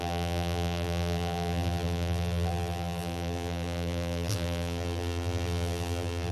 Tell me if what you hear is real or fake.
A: fake